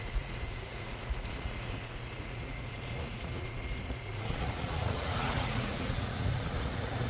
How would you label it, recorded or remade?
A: remade